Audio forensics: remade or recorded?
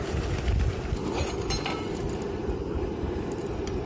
recorded